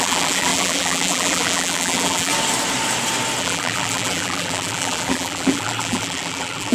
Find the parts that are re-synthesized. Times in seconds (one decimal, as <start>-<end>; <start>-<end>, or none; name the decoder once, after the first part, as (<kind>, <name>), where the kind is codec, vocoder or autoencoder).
0.0-2.3 (vocoder, BigVGAN v2); 3.4-6.7